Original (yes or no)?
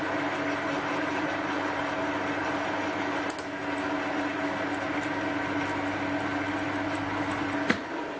yes